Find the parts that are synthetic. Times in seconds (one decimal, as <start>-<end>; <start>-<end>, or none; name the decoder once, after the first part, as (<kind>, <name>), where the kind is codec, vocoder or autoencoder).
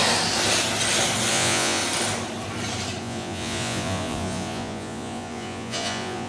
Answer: 1.3-1.8 (vocoder, Vocos); 3.0-6.3